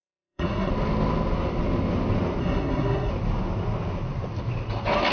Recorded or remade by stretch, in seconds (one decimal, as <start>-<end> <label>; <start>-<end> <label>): 0.0-0.7 remade; 0.7-2.4 recorded; 2.4-3.1 remade; 3.1-5.1 recorded